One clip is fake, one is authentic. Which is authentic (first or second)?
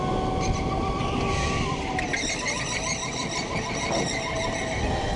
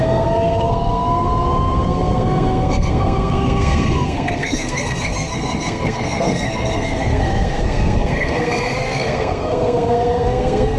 first